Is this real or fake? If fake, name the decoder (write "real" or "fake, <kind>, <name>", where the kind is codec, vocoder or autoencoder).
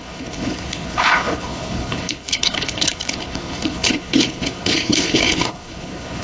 fake, codec, HILCodec